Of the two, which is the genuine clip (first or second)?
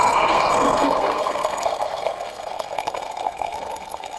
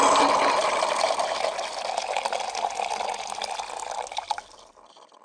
second